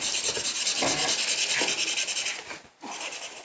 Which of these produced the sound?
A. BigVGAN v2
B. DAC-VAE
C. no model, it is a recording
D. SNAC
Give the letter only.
C